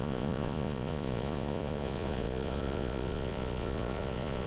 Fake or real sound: fake